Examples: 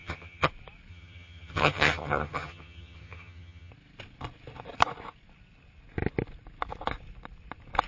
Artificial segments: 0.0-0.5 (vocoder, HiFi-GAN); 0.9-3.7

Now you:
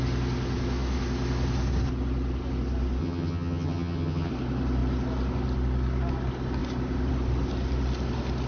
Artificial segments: 3.0-4.3 (vocoder, HiFi-GAN)

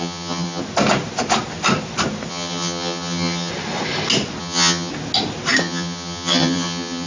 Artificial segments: 0.0-0.6 (vocoder, HiFi-GAN); 2.3-3.5; 4.4-4.9; 5.6-7.1

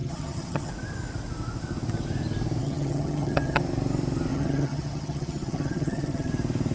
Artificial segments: 0.0-0.7 (vocoder, HiFi-GAN); 2.6-3.6; 4.3-6.3

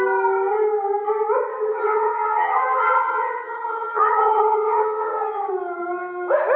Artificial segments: 1.5-5.5 (vocoder, HiFi-GAN)